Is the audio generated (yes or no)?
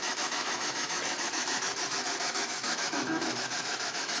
yes